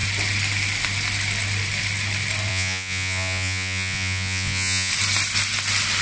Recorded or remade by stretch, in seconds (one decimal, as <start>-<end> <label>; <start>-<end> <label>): 0.0-2.5 recorded; 2.5-4.9 remade; 4.9-6.0 recorded